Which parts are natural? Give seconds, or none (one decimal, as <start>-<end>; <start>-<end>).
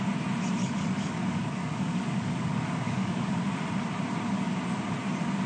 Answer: 0.0-0.6; 3.4-5.5